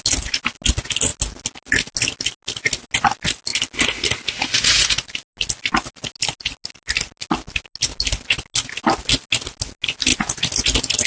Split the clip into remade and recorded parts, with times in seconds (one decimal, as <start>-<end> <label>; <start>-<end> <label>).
0.0-11.1 recorded